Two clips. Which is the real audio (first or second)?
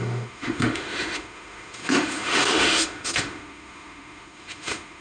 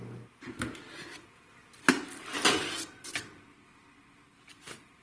second